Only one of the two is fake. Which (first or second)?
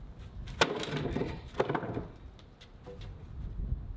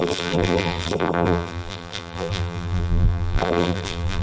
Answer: second